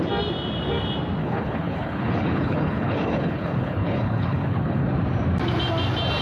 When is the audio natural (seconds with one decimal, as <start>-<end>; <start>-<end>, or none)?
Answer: 0.0-1.2; 4.9-6.2